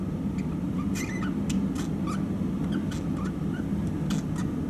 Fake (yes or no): no